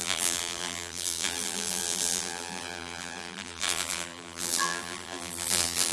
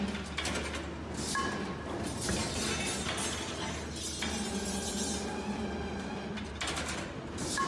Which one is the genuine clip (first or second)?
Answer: second